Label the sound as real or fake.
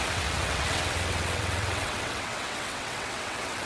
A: fake